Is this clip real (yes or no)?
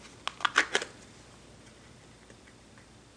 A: yes